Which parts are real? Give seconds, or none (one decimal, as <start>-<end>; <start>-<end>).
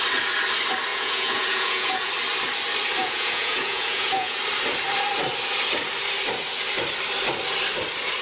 0.0-0.9; 2.1-3.0; 4.4-8.2